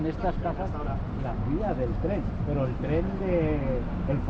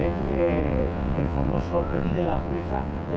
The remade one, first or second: second